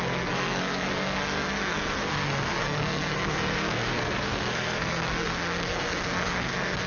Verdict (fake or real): fake